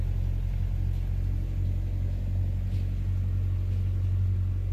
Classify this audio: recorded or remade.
recorded